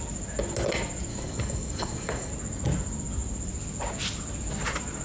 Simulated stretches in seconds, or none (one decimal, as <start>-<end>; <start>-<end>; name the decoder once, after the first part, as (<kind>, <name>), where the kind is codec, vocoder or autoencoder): 1.1-2.3 (codec, DAC)